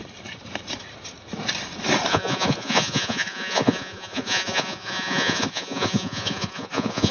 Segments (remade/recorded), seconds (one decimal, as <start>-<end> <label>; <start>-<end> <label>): 0.0-2.1 recorded; 2.1-7.1 remade